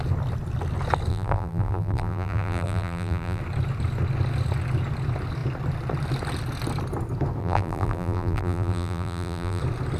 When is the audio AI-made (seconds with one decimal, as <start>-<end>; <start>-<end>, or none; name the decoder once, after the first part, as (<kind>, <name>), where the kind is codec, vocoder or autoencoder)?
1.1-3.4 (vocoder, BigVGAN v2); 7.4-9.6